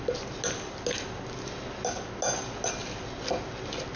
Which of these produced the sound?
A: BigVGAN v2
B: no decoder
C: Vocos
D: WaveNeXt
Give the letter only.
B